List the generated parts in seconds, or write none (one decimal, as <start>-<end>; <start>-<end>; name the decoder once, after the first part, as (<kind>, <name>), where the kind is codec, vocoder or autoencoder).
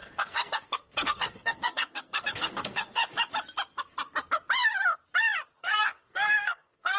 0.0-3.0 (codec, SNAC); 5.6-7.0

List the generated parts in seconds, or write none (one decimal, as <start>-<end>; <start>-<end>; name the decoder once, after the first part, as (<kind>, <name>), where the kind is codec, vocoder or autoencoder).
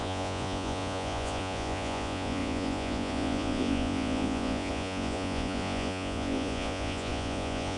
0.0-7.8 (vocoder, Vocos)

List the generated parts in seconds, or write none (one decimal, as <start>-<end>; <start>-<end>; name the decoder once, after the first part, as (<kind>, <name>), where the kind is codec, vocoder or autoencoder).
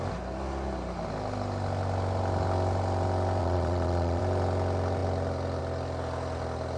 3.4-4.2 (vocoder, Vocos)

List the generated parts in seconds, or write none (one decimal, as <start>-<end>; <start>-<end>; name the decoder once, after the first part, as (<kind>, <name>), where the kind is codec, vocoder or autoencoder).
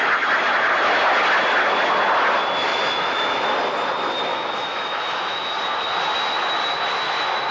2.7-3.5 (autoencoder, DAC-VAE); 4.3-5.5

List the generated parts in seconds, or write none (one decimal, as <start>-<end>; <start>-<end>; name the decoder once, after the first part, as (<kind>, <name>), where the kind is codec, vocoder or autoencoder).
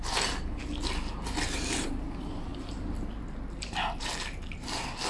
none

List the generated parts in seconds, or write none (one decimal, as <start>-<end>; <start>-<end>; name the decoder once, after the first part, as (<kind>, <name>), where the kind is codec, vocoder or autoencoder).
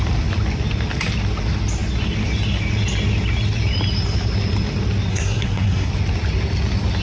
5.1-5.9 (codec, SNAC)